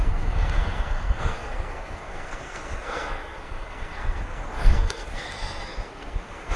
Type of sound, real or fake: fake